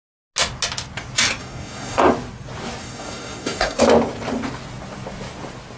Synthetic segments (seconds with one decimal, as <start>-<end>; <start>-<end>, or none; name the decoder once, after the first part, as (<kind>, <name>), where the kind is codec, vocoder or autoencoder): 1.4-2.0 (codec, DAC); 2.8-3.8